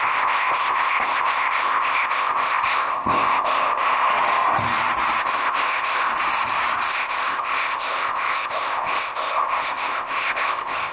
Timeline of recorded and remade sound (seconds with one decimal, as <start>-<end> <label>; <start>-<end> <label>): 0.0-4.1 remade; 4.1-5.2 recorded; 5.2-6.1 remade; 6.1-6.9 recorded; 6.9-10.9 remade